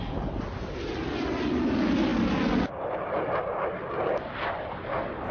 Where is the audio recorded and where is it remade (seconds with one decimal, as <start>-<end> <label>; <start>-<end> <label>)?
0.0-5.3 recorded

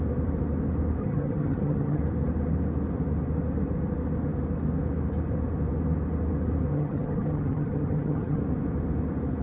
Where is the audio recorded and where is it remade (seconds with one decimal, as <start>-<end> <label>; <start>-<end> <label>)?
0.0-1.0 recorded; 1.0-2.0 remade; 2.0-6.7 recorded; 6.7-8.4 remade; 8.4-9.4 recorded

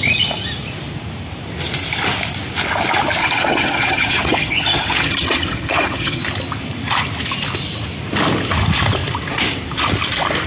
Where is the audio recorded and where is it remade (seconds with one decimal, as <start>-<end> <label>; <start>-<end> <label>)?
0.0-3.2 recorded; 3.2-6.2 remade; 6.2-10.5 recorded

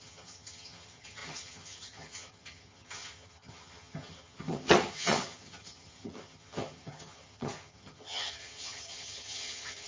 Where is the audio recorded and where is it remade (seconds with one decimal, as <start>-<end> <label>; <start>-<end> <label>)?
0.0-9.9 remade

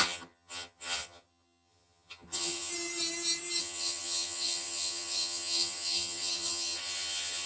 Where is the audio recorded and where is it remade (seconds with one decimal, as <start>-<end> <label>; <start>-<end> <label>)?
0.0-2.7 remade; 2.7-3.6 recorded; 3.6-7.5 remade

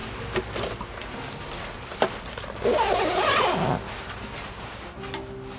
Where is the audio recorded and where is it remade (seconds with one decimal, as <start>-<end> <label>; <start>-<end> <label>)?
0.0-5.6 recorded

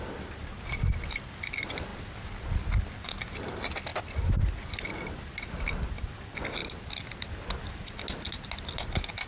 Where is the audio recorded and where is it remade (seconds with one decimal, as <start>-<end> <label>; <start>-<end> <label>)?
0.0-9.3 recorded